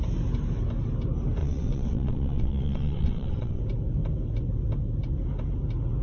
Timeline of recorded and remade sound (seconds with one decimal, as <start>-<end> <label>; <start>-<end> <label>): 0.0-1.4 recorded; 1.4-3.6 remade; 3.6-6.0 recorded